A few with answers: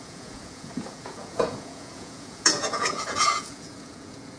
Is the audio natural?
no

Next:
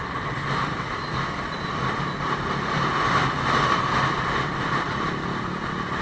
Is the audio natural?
yes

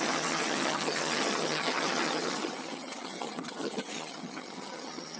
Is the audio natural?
no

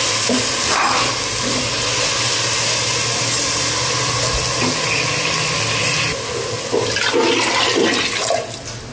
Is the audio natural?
yes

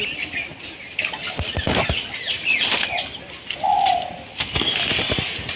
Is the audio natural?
yes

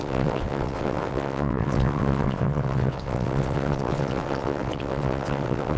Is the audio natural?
no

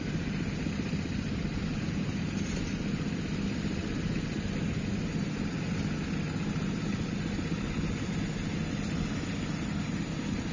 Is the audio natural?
yes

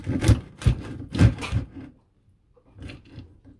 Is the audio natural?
yes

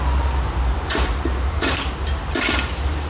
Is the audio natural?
yes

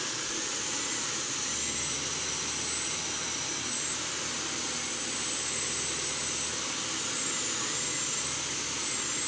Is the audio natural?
yes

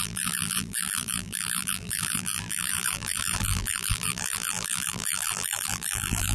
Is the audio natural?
no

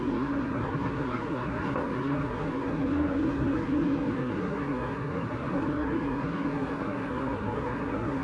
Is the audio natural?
no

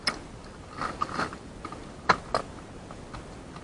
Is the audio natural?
yes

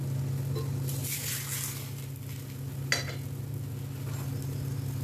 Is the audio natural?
yes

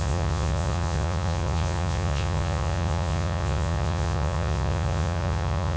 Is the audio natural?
no